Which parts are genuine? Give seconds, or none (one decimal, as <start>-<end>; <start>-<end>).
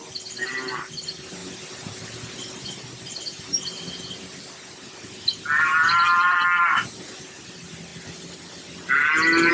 0.0-9.5